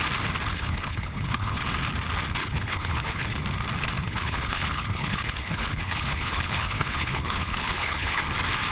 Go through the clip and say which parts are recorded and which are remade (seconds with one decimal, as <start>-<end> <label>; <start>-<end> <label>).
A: 0.0-0.5 recorded; 0.5-1.6 remade; 1.6-2.4 recorded; 2.4-3.4 remade; 3.4-4.0 recorded; 4.0-8.2 remade; 8.2-8.7 recorded